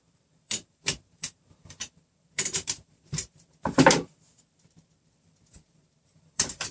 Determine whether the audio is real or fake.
fake